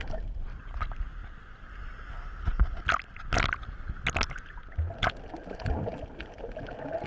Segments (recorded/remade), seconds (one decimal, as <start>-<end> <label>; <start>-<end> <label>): 0.0-7.1 recorded